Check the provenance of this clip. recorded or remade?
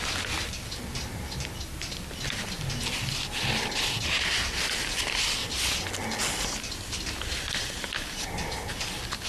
recorded